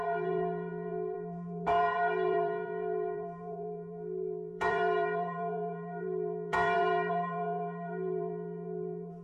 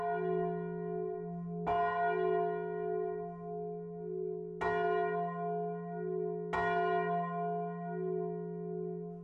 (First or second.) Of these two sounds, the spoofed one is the first